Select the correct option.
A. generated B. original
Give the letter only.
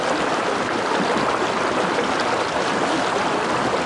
B